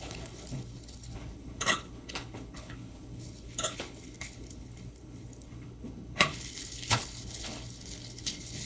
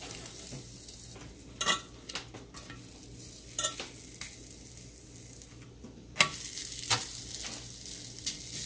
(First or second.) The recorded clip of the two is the second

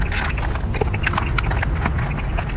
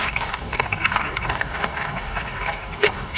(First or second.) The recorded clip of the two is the first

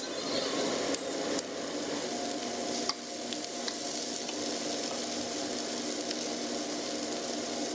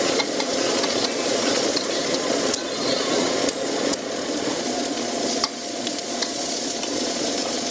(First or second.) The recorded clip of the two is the first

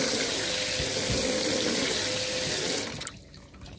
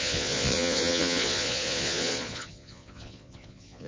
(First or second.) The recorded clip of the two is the first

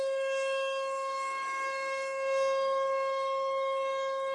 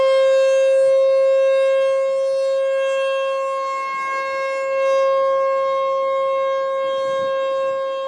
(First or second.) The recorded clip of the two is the second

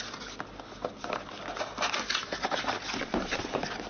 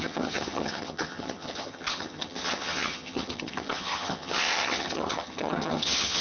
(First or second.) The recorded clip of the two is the first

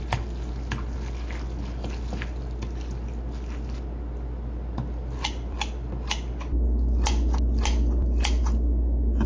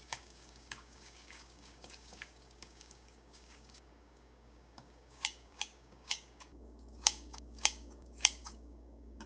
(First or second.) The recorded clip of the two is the first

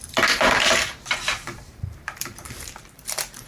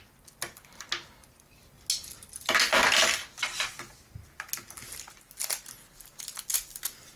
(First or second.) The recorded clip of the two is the second